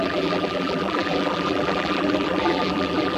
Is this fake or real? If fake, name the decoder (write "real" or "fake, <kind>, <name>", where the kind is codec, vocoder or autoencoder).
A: fake, vocoder, BigVGAN v2